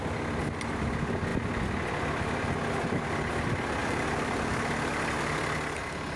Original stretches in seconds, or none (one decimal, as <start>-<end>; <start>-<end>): 0.0-3.8; 5.2-6.2